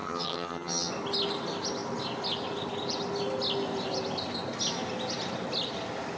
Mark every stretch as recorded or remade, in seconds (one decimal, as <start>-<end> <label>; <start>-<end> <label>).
0.0-0.9 remade; 0.9-6.2 recorded